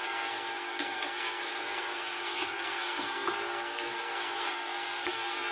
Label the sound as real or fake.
fake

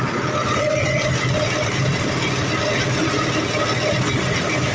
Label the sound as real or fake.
real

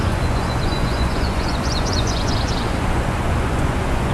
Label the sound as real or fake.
fake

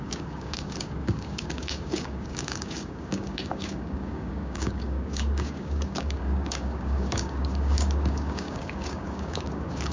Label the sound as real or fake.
fake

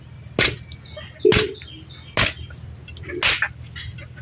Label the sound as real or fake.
real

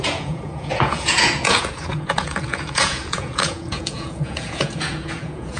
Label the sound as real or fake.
fake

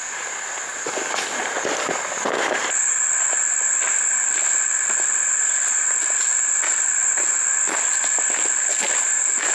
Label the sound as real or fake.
real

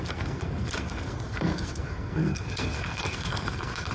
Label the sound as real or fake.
fake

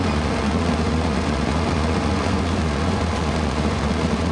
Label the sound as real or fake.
fake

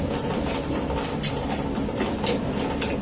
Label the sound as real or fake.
real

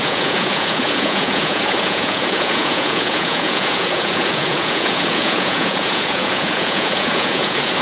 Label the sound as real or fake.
fake